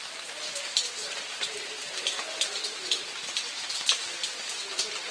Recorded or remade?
recorded